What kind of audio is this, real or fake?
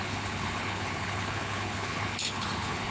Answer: fake